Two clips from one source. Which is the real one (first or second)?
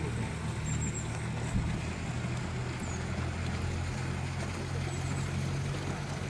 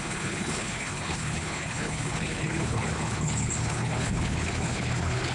first